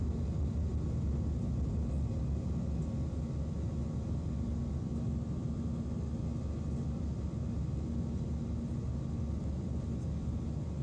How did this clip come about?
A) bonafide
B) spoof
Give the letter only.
A